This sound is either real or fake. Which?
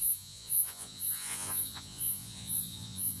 fake